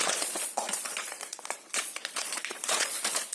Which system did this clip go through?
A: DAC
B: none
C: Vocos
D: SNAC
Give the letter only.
C